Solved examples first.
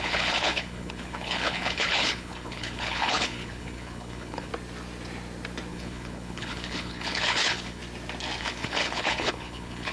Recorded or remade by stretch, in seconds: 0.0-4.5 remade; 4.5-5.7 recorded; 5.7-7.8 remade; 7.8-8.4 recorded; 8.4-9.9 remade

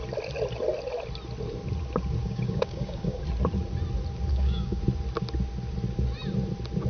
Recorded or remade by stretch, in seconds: 0.0-2.2 recorded; 2.2-3.2 remade; 3.2-4.3 recorded; 4.3-4.8 remade; 4.8-6.9 recorded

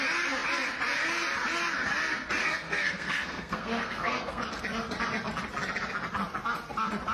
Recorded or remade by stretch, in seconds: 0.0-2.4 recorded; 2.4-4.4 remade; 4.4-7.1 recorded

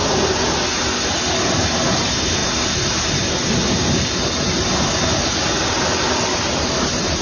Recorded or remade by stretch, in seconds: 0.0-7.2 recorded

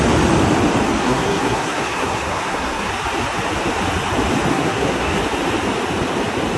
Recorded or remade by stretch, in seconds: 0.0-1.0 recorded; 1.0-2.9 remade; 2.9-4.5 recorded; 4.5-5.2 remade; 5.2-6.6 recorded

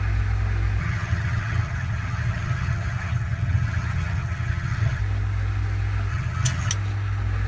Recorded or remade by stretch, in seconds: 0.0-0.8 recorded; 0.8-5.0 remade; 5.0-6.1 recorded; 6.1-6.7 remade; 6.7-7.5 recorded

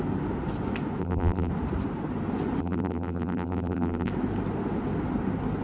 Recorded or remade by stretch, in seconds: 0.0-1.0 recorded; 1.0-1.5 remade; 1.5-2.6 recorded; 2.6-4.1 remade; 4.1-5.6 recorded

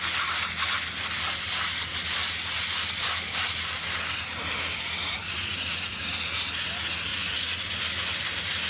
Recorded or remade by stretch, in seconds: 0.0-5.0 recorded; 5.0-6.0 remade; 6.0-7.1 recorded; 7.1-7.7 remade; 7.7-8.7 recorded